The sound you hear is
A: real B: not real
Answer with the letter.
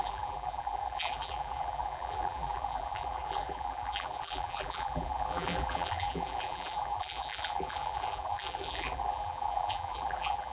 B